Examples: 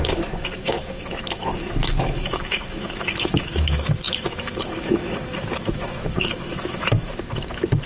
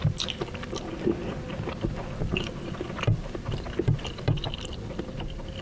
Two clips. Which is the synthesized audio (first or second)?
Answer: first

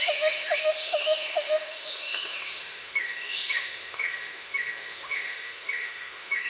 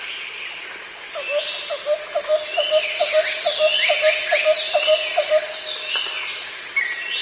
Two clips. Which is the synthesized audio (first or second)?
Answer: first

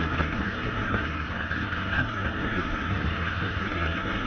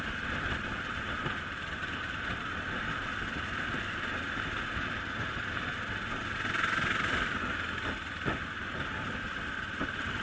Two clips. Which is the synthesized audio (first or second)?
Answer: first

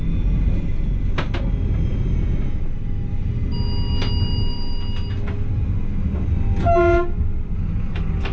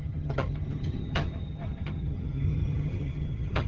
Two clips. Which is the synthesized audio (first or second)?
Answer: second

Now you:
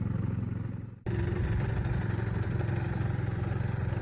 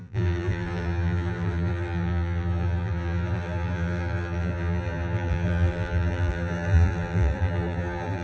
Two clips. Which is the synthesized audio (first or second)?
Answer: second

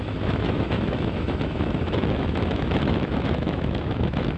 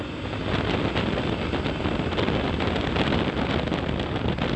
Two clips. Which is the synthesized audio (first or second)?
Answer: first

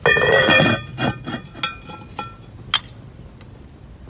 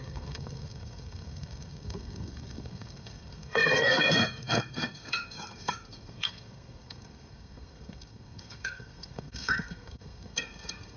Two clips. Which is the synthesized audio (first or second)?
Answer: second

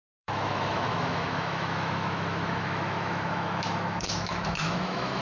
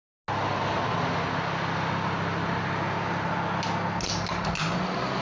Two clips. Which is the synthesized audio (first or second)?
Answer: first